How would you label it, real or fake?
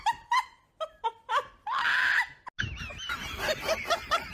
real